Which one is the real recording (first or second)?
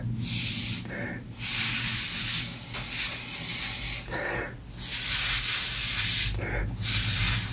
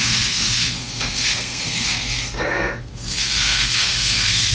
first